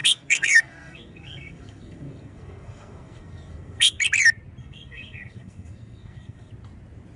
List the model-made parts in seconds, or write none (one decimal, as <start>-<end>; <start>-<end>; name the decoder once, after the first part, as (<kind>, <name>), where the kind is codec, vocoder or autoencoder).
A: 0.0-4.0 (codec, SNAC); 4.6-6.5